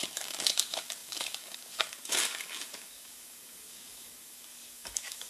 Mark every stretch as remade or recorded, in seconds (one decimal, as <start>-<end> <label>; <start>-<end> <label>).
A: 0.0-5.3 remade